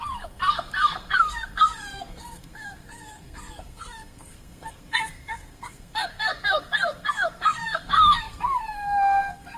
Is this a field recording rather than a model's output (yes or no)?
no